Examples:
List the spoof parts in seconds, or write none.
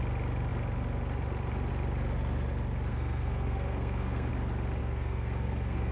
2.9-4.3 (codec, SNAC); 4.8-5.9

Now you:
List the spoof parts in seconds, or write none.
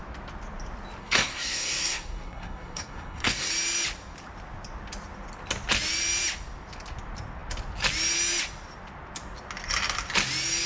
1.0-3.5 (codec, SNAC)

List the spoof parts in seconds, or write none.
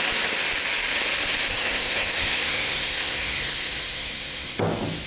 1.5-4.6 (codec, SNAC)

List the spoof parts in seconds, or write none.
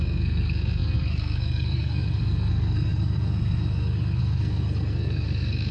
0.0-5.7 (codec, SNAC)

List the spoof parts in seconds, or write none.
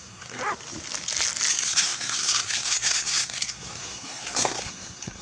0.0-0.4 (codec, SNAC); 1.5-5.2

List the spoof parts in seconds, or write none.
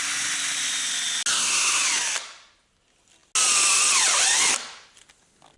1.3-1.8 (codec, SNAC)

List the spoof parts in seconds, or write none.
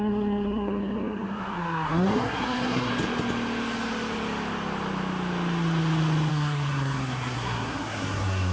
0.0-2.9 (codec, SNAC); 6.3-8.5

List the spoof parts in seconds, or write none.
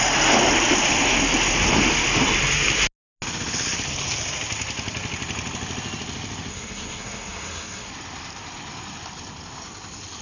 6.5-7.9 (codec, SNAC)